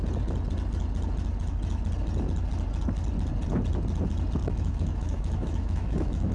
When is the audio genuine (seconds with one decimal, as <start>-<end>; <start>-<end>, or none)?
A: 0.0-4.4